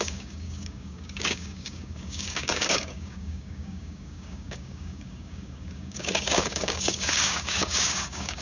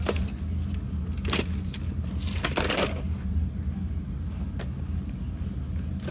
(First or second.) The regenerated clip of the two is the first